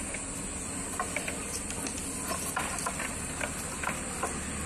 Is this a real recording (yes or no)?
yes